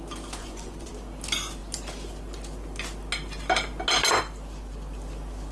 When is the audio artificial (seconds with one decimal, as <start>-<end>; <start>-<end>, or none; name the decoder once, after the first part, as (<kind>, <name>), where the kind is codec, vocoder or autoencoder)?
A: 0.4-0.9 (vocoder, Vocos)